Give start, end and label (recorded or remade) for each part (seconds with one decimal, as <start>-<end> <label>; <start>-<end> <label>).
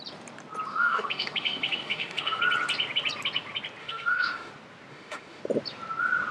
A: 0.0-0.7 recorded; 0.7-2.4 remade; 2.4-3.8 recorded; 3.8-4.5 remade; 4.5-4.9 recorded; 4.9-5.4 remade; 5.4-6.3 recorded